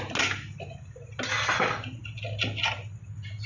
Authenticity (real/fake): real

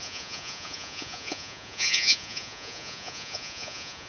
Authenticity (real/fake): fake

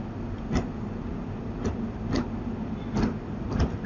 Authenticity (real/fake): real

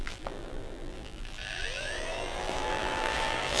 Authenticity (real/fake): fake